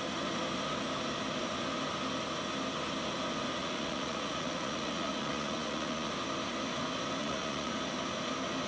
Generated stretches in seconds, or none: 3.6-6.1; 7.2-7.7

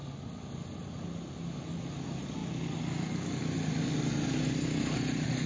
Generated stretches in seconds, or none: none

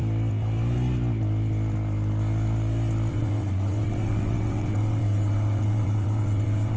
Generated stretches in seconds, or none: 3.1-6.8